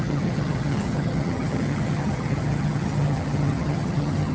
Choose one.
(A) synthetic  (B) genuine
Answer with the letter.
A